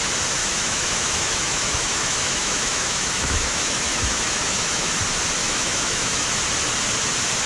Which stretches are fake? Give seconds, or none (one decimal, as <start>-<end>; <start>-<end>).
0.4-4.9; 5.4-6.4